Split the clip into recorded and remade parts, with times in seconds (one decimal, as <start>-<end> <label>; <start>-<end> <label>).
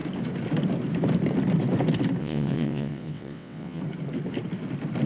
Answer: 0.0-2.2 recorded; 2.2-3.8 remade; 3.8-5.1 recorded